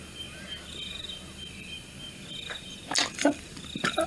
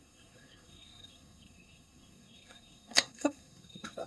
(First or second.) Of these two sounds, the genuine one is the first